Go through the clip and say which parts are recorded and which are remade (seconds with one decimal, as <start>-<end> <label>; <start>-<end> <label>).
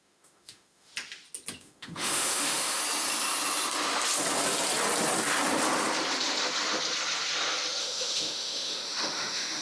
0.0-0.9 remade; 0.9-1.6 recorded; 1.6-2.8 remade; 2.8-7.8 recorded; 7.8-9.6 remade